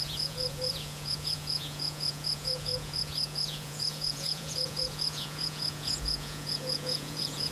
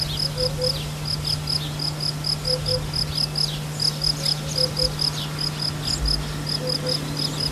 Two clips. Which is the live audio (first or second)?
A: second